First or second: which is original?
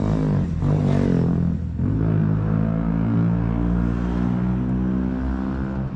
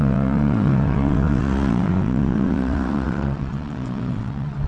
first